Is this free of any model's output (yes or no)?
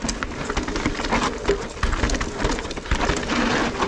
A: yes